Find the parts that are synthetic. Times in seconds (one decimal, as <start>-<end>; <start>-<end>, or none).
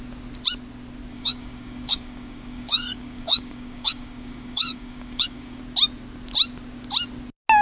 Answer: 1.1-5.6